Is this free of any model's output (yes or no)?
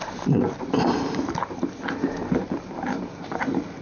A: yes